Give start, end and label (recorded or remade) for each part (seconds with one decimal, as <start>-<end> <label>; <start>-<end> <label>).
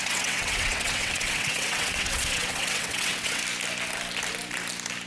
0.0-3.4 remade; 3.4-5.1 recorded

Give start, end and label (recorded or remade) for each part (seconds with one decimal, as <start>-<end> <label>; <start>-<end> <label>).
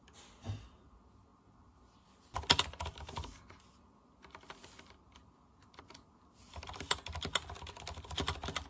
0.0-8.7 recorded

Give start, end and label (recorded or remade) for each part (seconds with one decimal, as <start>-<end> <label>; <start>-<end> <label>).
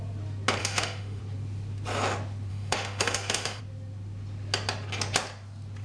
0.0-0.6 recorded; 0.6-1.2 remade; 1.2-2.5 recorded; 2.5-3.6 remade; 3.6-5.8 recorded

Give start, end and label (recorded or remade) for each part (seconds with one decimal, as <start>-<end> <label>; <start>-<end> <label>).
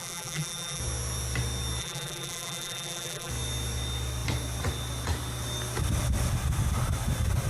0.0-0.8 remade; 0.8-1.8 recorded; 1.8-3.3 remade; 3.3-7.5 recorded